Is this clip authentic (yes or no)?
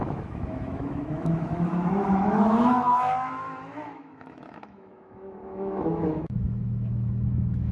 no